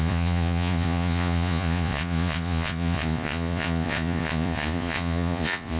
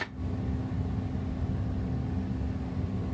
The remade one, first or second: first